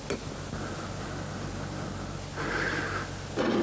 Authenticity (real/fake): real